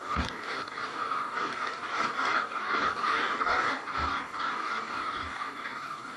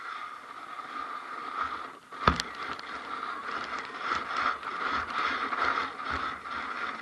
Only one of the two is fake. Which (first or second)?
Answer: first